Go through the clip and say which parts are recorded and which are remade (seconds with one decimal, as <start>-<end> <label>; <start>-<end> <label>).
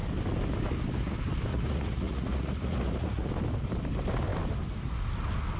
0.0-1.5 recorded; 1.5-3.3 remade; 3.3-5.6 recorded